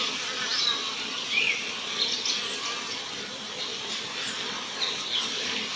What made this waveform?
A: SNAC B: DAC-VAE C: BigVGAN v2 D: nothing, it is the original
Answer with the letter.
D